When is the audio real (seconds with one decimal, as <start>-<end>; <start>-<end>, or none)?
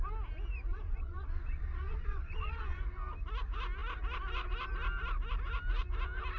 0.0-0.7; 2.8-6.4